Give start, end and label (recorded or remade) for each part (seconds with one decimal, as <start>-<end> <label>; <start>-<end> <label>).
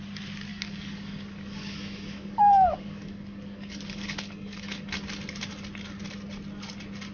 0.0-0.5 recorded; 0.5-4.8 remade; 4.8-7.1 recorded